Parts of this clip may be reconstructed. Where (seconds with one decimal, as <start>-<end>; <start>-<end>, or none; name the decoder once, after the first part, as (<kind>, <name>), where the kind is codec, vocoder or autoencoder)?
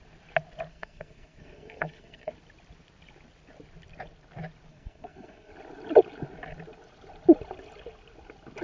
0.7-2.3 (codec, SNAC); 4.7-5.5